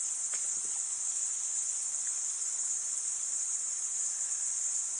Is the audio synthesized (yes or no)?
no